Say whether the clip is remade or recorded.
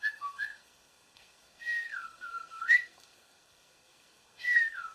remade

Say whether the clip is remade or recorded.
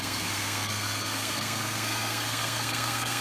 remade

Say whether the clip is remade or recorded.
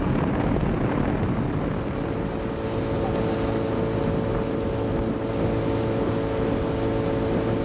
recorded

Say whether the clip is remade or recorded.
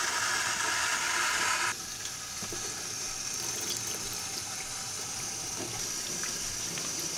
recorded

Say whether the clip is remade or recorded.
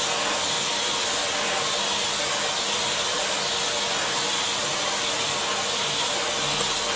recorded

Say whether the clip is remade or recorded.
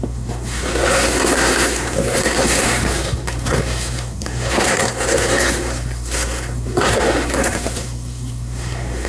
remade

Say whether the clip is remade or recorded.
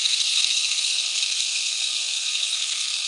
remade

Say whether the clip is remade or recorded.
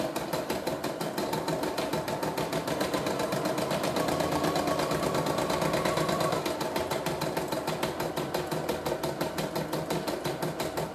recorded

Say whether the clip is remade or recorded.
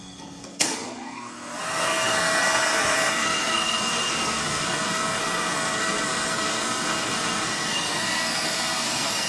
remade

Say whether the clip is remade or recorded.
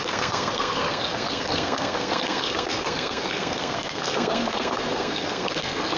remade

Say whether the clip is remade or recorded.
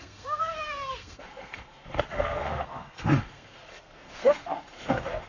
remade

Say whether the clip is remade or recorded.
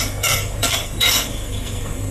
remade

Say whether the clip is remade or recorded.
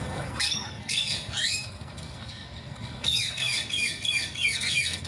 remade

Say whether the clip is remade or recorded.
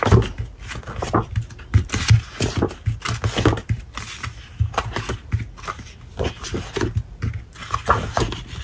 recorded